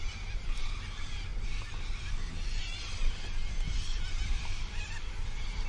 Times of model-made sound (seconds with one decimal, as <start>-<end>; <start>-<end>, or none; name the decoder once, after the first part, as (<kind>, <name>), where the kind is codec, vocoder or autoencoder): none